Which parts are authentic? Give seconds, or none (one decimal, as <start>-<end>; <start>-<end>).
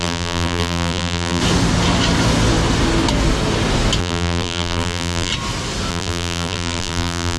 1.4-4.0; 5.3-5.9